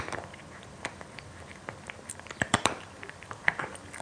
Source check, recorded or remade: remade